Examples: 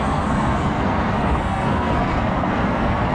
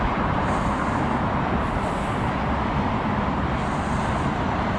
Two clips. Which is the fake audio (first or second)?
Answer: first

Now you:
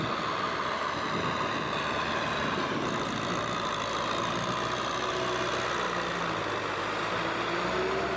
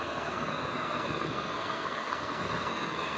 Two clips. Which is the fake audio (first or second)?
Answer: second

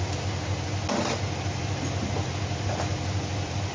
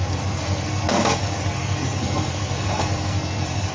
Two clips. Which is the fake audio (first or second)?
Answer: second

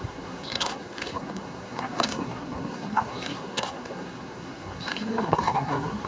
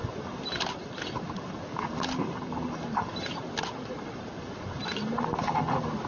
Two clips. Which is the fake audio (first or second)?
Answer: first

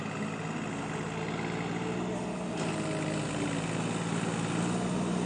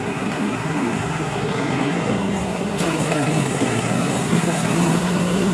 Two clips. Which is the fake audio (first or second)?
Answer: second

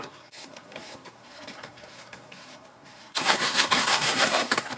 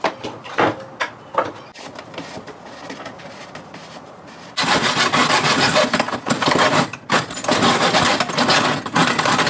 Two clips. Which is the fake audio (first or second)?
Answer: first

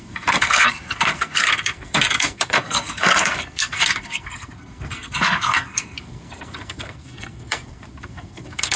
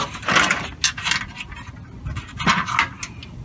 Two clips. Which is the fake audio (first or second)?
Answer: first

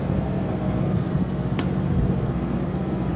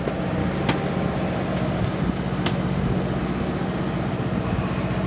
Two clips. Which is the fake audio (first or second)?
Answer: first